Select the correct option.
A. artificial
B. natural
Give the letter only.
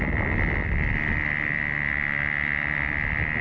B